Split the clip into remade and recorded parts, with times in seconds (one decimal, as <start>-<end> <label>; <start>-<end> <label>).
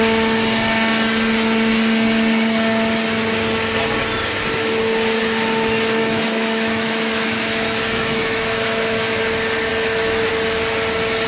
0.0-6.0 recorded; 6.0-9.2 remade; 9.2-9.7 recorded; 9.7-10.3 remade; 10.3-11.3 recorded